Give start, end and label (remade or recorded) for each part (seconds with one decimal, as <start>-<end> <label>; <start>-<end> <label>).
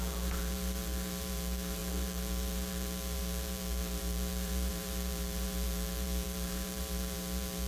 0.0-7.7 remade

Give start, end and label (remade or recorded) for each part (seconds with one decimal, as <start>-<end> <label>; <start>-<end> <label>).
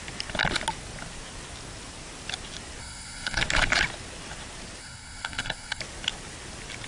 0.0-2.8 recorded; 2.8-3.4 remade; 3.4-4.8 recorded; 4.8-5.8 remade; 5.8-6.9 recorded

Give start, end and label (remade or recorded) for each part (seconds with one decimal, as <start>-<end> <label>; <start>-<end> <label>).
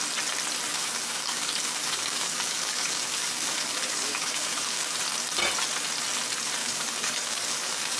0.0-0.7 recorded; 0.7-4.9 remade; 4.9-6.6 recorded; 6.6-8.0 remade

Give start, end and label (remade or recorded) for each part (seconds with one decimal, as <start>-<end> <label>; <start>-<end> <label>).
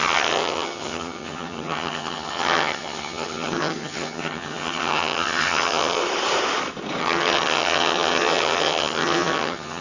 0.0-6.0 remade; 6.0-7.0 recorded; 7.0-9.8 remade